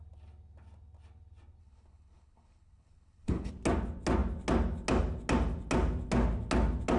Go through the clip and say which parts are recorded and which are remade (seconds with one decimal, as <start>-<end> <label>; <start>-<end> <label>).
0.0-1.6 recorded; 1.6-3.5 remade; 3.5-7.0 recorded